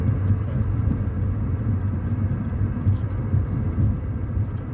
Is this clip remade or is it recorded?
recorded